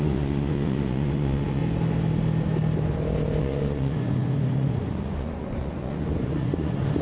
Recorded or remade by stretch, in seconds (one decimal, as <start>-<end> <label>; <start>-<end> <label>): 0.0-1.6 remade; 1.6-3.4 recorded; 3.4-7.0 remade